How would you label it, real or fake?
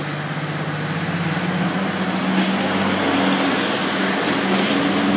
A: real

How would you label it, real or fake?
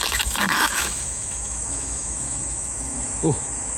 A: fake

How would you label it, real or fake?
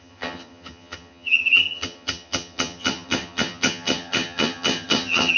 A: fake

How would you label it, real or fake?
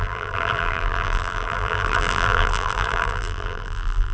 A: fake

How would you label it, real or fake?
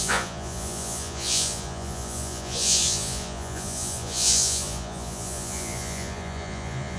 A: fake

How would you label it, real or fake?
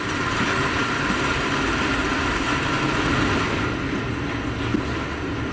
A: real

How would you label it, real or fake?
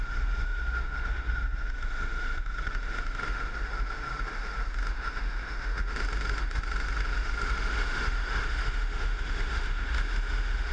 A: fake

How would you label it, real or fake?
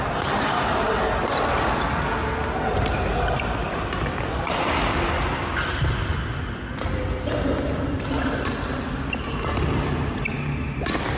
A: real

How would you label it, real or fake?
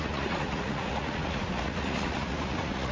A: fake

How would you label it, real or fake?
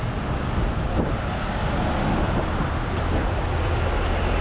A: real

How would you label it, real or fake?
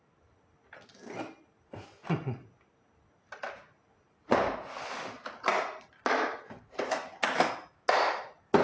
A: real